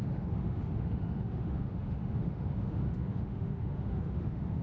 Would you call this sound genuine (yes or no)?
no